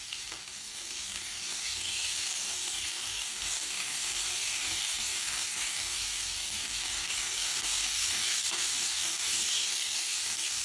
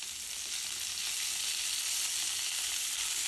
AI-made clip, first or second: first